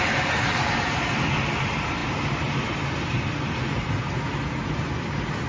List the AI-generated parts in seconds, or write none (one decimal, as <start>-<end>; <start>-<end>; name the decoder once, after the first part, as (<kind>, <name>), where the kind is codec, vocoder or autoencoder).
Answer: none